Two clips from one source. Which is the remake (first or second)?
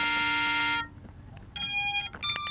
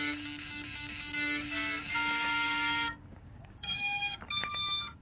second